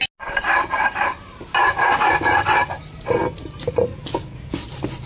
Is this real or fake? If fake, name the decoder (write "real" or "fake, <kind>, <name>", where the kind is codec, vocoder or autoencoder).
real